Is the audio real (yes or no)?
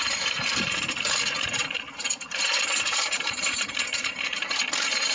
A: no